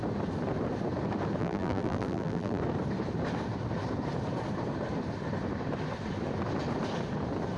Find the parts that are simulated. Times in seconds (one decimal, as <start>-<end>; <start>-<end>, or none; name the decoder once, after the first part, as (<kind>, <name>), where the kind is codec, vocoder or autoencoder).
1.4-2.6 (vocoder, BigVGAN v2)